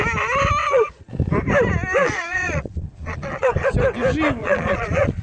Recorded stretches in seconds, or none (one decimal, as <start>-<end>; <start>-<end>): 0.0-0.6; 1.1-2.0; 3.7-4.4